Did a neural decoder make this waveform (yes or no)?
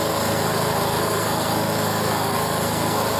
yes